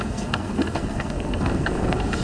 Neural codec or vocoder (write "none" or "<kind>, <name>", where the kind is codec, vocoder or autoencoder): codec, SNAC